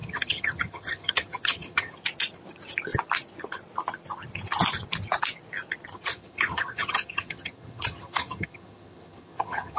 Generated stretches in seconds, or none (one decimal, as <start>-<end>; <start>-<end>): 0.0-1.9; 5.9-9.8